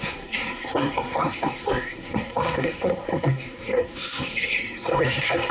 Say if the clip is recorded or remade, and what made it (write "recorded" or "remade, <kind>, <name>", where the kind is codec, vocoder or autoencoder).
remade, codec, SNAC